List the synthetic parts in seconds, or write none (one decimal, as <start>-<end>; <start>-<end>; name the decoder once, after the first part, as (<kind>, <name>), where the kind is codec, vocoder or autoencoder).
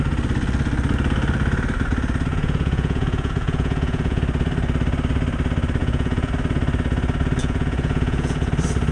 2.3-4.2 (vocoder, Vocos); 5.8-6.3; 7.4-8.5